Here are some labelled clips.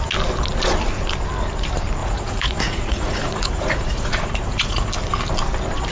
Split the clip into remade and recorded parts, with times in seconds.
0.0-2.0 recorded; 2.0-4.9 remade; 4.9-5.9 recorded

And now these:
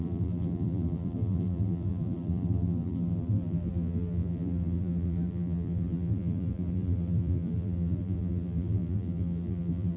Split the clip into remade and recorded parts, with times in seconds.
0.0-10.0 remade

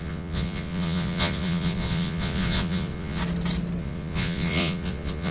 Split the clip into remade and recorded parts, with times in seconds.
0.0-3.2 remade; 3.2-3.8 recorded; 3.8-5.3 remade

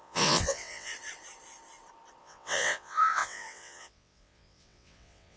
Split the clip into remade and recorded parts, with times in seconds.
0.0-0.9 remade; 0.9-2.2 recorded; 2.2-5.4 remade

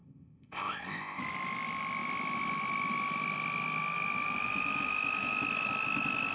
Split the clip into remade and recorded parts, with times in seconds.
0.0-1.2 remade; 1.2-6.3 recorded

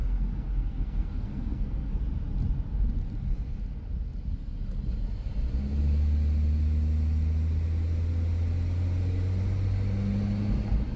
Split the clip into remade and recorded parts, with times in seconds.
0.0-2.0 remade; 2.0-11.0 recorded

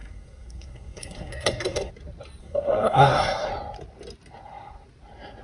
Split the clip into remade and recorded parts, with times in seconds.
0.0-1.9 remade; 1.9-2.4 recorded; 2.4-3.5 remade; 3.5-5.4 recorded

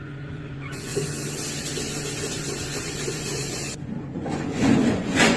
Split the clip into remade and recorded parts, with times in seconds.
0.0-0.9 remade; 0.9-2.3 recorded; 2.3-5.4 remade